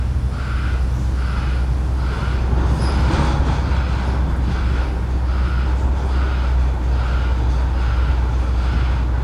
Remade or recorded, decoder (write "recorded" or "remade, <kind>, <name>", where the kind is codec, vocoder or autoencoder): recorded